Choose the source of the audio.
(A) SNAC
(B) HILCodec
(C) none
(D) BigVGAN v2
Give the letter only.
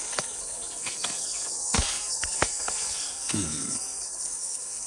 A